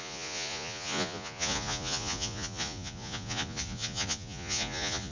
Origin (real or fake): fake